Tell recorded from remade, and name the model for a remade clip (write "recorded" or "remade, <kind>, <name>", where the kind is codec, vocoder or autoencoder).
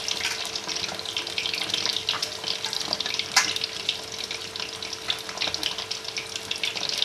recorded